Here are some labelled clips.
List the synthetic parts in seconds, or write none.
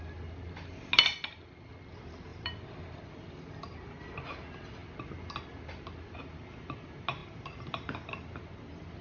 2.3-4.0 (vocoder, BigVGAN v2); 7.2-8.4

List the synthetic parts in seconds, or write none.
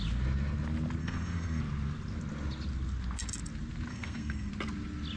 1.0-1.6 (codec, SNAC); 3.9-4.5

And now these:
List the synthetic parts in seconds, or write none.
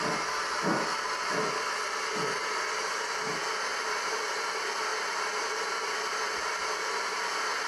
4.9-5.5 (vocoder, BigVGAN v2)